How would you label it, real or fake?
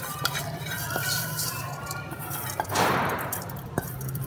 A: fake